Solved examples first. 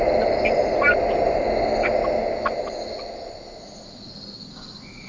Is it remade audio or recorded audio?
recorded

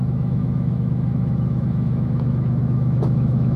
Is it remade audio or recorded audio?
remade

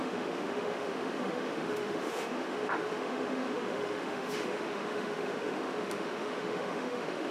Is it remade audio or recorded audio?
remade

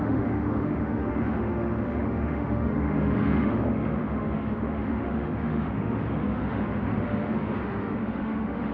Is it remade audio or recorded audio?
remade